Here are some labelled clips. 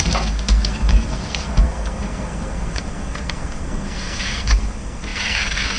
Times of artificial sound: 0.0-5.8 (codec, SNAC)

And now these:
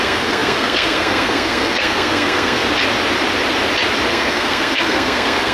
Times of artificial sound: 0.0-2.6 (codec, SNAC); 4.1-5.5

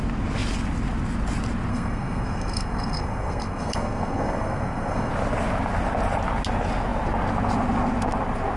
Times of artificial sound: 1.7-5.1 (codec, SNAC)

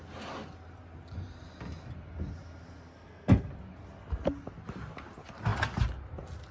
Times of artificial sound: 2.9-3.5 (codec, SNAC)

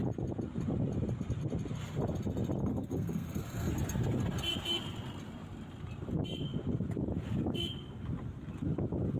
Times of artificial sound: 2.7-3.7 (codec, SNAC)

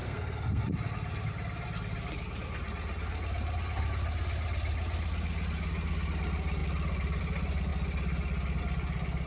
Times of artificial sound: 0.0-0.6 (codec, SNAC)